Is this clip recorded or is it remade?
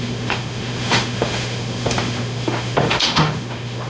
remade